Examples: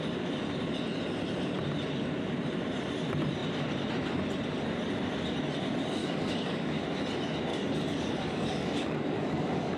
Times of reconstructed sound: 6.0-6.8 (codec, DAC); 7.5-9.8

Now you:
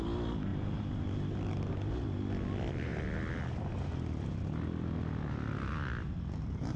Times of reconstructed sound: none

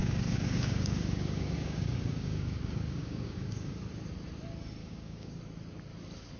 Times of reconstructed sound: 0.0-3.8 (codec, DAC); 4.8-5.4

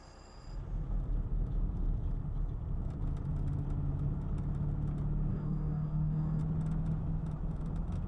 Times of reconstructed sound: 5.3-6.4 (codec, DAC)

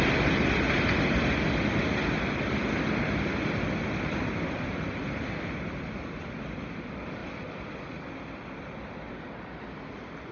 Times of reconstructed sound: none